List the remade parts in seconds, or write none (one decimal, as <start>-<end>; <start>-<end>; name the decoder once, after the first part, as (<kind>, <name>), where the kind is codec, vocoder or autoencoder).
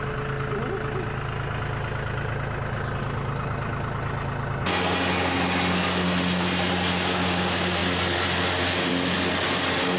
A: none